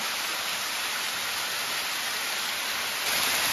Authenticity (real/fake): real